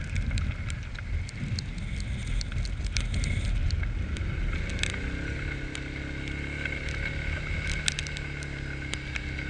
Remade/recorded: recorded